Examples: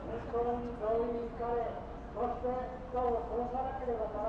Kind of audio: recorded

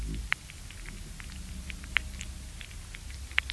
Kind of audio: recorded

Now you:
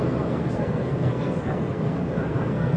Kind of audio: remade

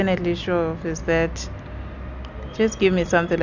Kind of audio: recorded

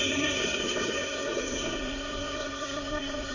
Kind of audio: remade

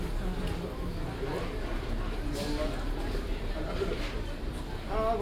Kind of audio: recorded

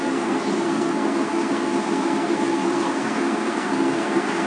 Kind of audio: remade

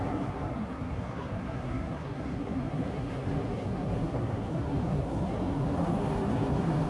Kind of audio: remade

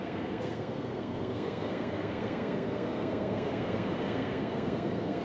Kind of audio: remade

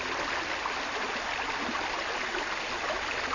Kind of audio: recorded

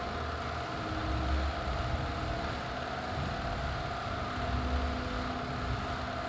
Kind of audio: recorded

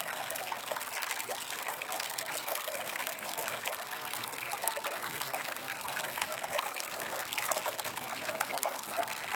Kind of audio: remade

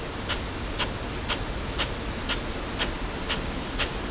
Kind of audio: recorded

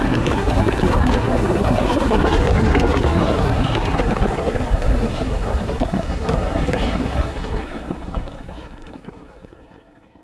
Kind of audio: remade